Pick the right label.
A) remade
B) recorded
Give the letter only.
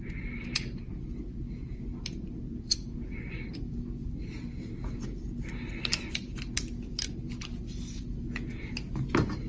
B